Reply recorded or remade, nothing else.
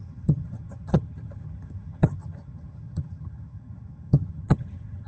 remade